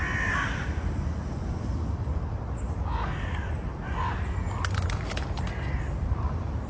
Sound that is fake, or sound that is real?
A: real